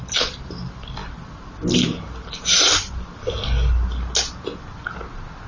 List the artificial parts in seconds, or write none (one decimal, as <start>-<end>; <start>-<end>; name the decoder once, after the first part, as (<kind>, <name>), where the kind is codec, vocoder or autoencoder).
none